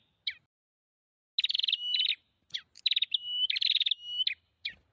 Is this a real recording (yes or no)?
yes